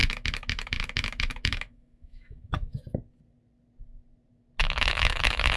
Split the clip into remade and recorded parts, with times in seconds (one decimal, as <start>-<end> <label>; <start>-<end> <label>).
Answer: 0.0-2.8 remade; 2.8-4.6 recorded; 4.6-5.6 remade